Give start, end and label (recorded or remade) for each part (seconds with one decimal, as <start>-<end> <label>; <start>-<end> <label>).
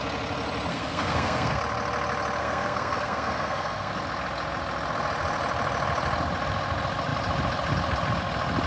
0.0-0.7 recorded; 0.7-1.6 remade; 1.6-2.4 recorded; 2.4-3.9 remade; 3.9-8.7 recorded